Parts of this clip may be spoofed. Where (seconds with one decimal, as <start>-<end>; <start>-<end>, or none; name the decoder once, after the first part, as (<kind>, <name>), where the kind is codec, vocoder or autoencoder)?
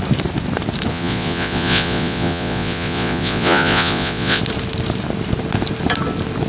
0.9-4.4 (vocoder, Vocos)